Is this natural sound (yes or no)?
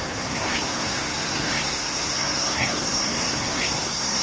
no